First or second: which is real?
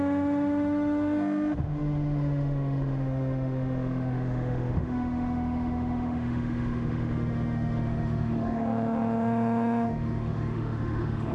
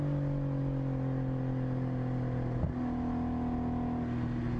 second